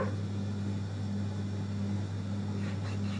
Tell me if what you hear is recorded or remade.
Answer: recorded